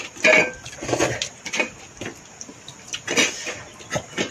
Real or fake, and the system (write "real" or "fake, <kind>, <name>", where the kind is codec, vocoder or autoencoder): real